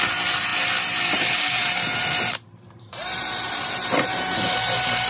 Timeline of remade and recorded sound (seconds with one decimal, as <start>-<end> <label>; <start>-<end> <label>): 0.0-5.1 remade